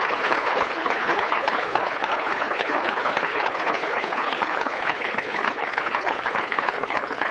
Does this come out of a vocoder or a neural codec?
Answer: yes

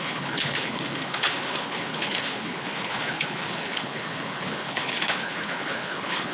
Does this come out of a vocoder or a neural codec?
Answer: yes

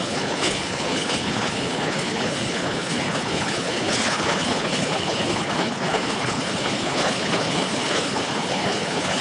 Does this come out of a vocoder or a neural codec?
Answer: yes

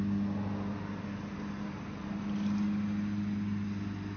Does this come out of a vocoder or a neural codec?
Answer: no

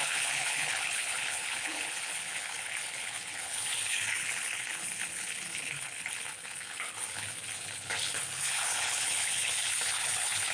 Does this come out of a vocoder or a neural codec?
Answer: yes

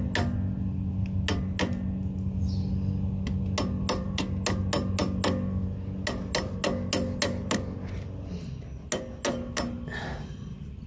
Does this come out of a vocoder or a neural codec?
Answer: no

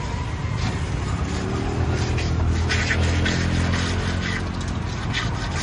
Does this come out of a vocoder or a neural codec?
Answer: no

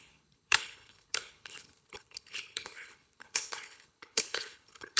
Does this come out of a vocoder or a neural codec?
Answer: yes